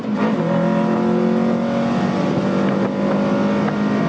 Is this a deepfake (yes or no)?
no